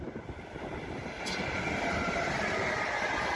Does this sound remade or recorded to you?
recorded